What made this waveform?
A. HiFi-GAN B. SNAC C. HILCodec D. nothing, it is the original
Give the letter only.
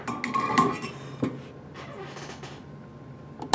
D